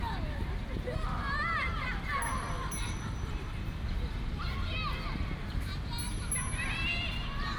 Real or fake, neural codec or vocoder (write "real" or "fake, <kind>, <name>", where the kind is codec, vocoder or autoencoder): real